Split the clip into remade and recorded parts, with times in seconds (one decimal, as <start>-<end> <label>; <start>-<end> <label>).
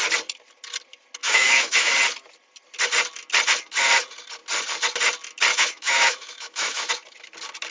0.0-1.2 recorded; 1.2-1.9 remade; 1.9-5.5 recorded; 5.5-6.9 remade; 6.9-7.7 recorded